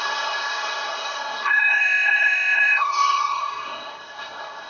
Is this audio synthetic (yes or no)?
yes